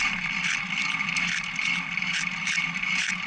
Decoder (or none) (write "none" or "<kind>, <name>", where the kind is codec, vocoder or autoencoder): none